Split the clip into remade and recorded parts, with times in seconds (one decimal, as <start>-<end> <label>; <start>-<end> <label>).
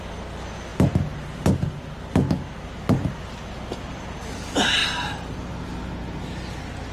0.0-6.9 recorded